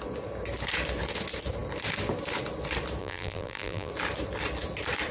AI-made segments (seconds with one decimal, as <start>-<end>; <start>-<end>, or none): 3.0-3.9